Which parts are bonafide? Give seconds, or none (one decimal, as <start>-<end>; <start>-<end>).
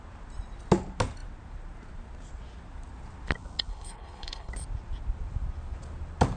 0.0-3.7; 4.5-6.4